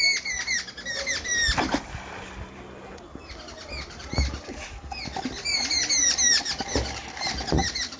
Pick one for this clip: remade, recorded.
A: recorded